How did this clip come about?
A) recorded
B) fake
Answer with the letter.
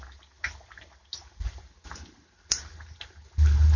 A